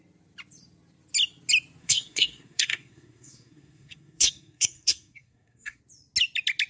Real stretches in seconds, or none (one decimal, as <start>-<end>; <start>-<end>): 0.0-1.8; 5.8-6.7